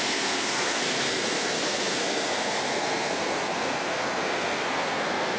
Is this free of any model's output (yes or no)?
no